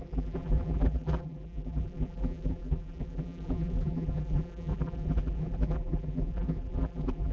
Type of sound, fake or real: fake